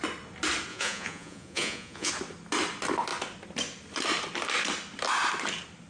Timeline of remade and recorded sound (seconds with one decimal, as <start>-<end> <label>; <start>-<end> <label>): 0.0-0.7 recorded; 0.7-2.1 remade; 2.1-5.9 recorded